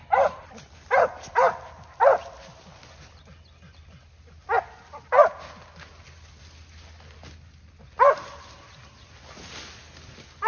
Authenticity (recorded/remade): recorded